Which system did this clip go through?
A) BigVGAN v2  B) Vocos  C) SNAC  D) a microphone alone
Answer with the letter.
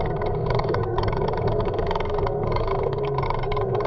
C